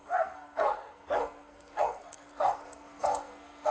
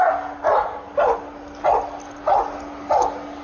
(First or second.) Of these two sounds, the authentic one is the second